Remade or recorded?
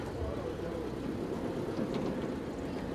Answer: recorded